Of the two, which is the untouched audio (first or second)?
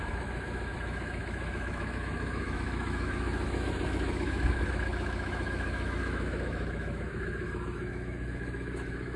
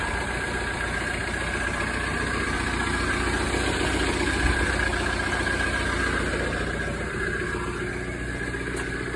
second